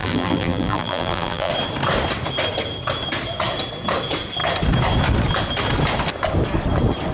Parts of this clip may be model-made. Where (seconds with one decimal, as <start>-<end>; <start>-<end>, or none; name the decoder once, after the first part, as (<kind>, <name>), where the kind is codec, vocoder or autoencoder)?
0.0-1.5 (vocoder, BigVGAN v2)